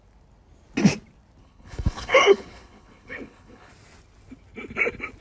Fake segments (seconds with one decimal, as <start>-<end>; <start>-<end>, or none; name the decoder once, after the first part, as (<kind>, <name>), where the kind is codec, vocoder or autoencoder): 1.4-3.7 (codec, HILCodec)